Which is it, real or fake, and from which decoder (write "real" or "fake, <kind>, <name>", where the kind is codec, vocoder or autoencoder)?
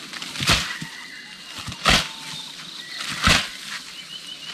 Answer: real